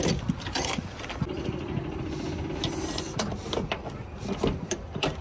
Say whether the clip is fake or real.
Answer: fake